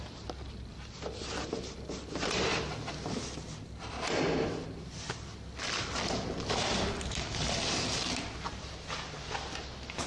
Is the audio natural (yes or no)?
yes